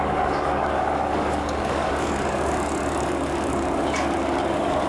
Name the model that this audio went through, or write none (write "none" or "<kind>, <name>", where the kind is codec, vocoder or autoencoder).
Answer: codec, DAC